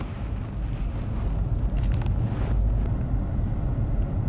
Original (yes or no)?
yes